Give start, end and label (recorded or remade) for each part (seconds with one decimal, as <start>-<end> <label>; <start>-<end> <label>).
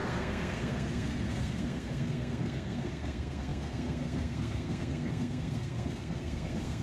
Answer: 0.0-6.8 remade